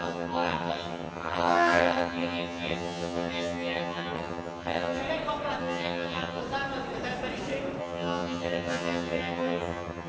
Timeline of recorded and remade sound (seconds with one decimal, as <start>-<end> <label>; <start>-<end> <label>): 0.0-5.0 remade; 5.0-5.6 recorded; 5.6-6.4 remade; 6.4-7.8 recorded; 7.8-10.1 remade